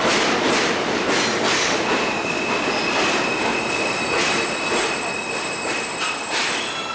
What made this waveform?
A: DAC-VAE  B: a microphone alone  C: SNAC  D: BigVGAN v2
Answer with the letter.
B